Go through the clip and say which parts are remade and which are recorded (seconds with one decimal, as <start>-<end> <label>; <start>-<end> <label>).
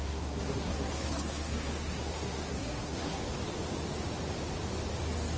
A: 0.0-3.2 remade; 3.2-5.4 recorded